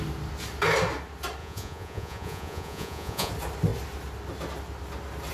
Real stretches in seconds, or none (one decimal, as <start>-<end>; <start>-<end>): 0.0-1.4; 3.3-5.3